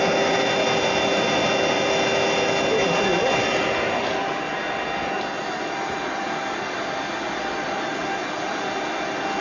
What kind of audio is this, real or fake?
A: real